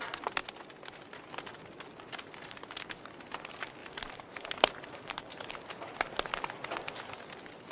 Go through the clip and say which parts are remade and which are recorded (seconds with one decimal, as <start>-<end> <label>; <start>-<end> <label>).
0.0-3.8 recorded; 3.8-5.5 remade; 5.5-7.7 recorded